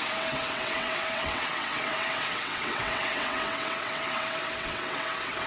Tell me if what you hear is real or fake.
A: fake